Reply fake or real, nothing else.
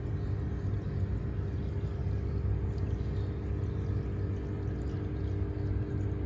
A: real